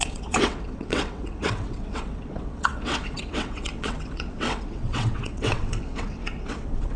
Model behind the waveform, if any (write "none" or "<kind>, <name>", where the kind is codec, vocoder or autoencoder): vocoder, WaveNeXt